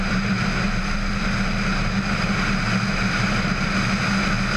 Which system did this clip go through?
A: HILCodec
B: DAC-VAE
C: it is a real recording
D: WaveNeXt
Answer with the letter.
C